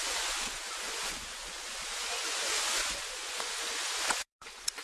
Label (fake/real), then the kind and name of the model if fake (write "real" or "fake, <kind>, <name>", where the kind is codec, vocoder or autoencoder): fake, vocoder, Vocos